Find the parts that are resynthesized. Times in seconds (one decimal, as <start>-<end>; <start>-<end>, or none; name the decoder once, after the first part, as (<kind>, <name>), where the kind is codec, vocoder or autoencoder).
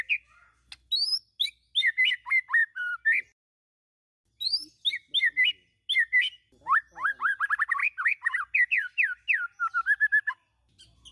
none